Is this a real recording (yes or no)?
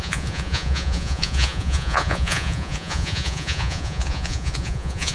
no